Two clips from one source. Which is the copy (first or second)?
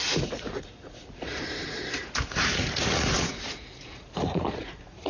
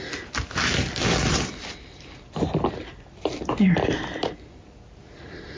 first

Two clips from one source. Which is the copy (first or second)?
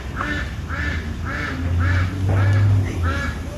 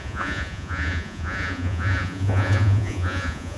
second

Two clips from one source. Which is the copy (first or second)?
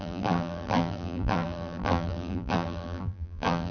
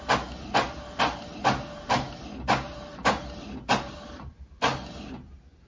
first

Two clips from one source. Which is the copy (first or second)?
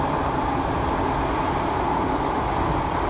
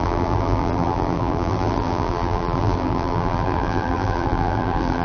second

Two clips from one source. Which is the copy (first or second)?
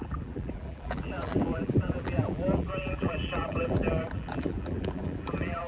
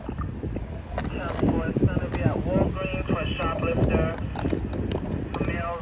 first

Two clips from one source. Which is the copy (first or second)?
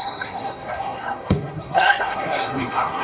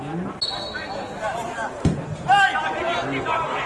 first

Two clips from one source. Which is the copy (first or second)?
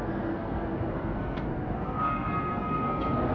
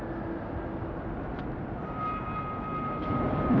first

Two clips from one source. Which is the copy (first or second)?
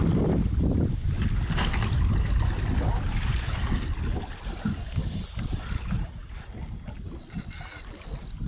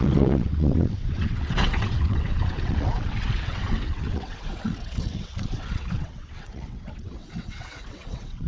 second